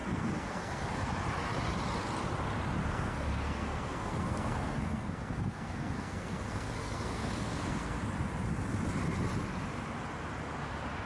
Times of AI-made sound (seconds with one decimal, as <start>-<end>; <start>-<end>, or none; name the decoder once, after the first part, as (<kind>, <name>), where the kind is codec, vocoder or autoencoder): 0.0-1.1 (codec, SNAC); 2.8-8.0